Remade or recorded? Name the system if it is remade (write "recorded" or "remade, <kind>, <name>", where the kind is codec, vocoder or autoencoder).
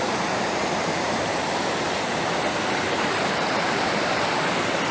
remade, vocoder, BigVGAN v2